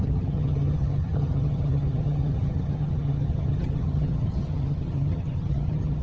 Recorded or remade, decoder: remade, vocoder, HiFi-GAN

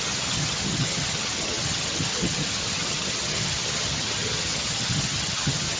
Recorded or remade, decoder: remade, vocoder, HiFi-GAN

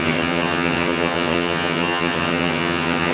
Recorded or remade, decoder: remade, vocoder, HiFi-GAN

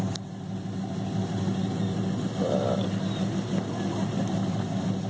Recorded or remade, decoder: recorded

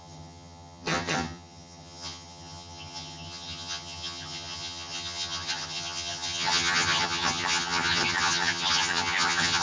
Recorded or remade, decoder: remade, vocoder, HiFi-GAN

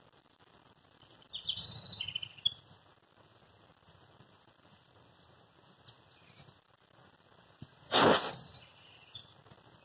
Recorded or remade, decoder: recorded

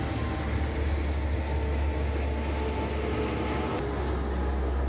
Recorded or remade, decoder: recorded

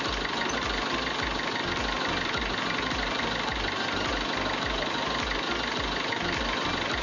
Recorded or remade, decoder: recorded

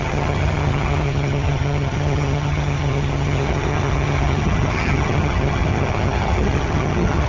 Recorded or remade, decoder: remade, vocoder, HiFi-GAN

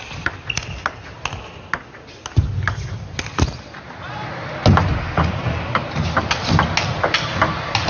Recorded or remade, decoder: recorded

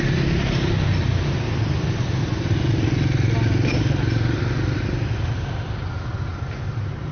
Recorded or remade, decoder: recorded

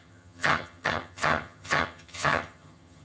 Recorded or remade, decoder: remade, vocoder, HiFi-GAN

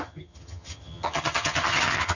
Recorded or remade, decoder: remade, vocoder, HiFi-GAN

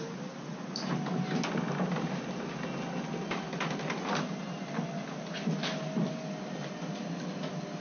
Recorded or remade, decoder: recorded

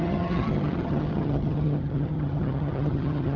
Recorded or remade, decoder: remade, vocoder, HiFi-GAN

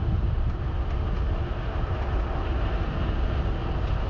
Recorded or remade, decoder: recorded